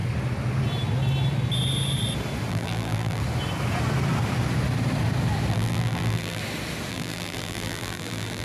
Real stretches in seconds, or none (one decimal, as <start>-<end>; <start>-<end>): 0.0-2.5; 3.2-5.5; 6.4-6.9